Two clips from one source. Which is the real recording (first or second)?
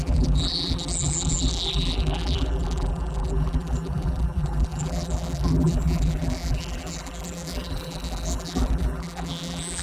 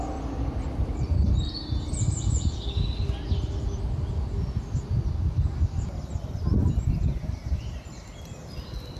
second